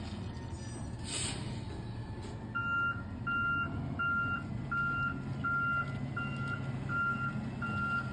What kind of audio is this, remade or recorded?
recorded